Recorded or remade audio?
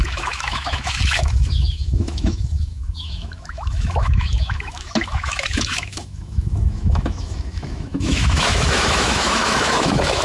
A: remade